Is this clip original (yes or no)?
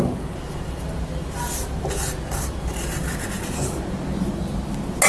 yes